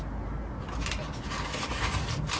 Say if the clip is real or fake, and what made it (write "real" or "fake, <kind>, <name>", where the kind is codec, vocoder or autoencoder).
real